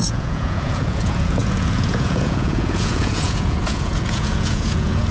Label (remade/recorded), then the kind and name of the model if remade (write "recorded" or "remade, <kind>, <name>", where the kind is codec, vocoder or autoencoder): remade, vocoder, Vocos